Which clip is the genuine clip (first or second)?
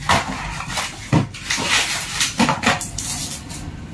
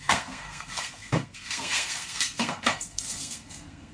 first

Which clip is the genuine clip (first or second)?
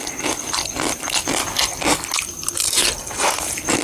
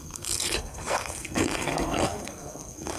first